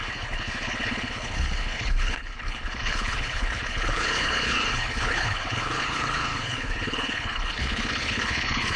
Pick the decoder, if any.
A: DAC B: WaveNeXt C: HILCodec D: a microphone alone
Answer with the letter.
C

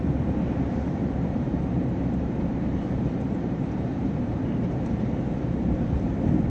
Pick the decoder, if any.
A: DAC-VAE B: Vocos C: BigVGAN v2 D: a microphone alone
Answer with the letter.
C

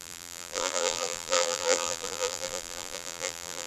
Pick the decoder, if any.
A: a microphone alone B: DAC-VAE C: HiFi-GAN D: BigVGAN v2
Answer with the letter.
D